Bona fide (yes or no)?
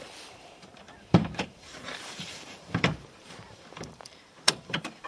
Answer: no